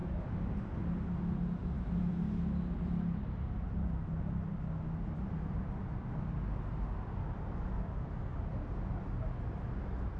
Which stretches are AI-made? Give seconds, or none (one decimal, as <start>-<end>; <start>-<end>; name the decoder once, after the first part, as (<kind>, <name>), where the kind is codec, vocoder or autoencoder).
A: 0.0-0.8 (vocoder, BigVGAN v2); 1.6-2.4